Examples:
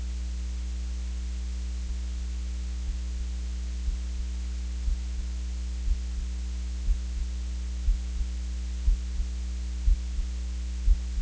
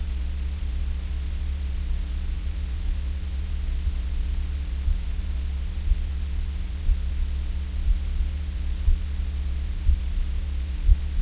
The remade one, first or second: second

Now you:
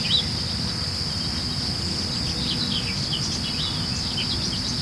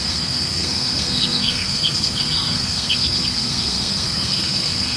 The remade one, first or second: second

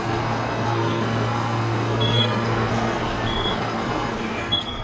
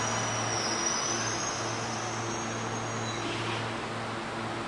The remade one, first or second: first